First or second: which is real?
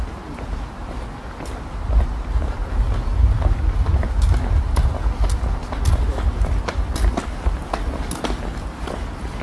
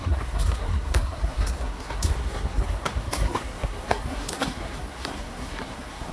first